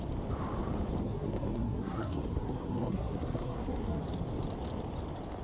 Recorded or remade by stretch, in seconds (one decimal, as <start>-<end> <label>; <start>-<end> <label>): 0.0-1.0 recorded; 1.0-4.0 remade; 4.0-5.4 recorded